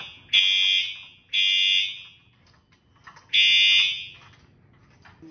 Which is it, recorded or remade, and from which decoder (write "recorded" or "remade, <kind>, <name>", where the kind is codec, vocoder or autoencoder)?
recorded